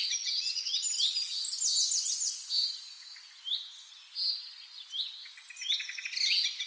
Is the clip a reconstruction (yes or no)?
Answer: no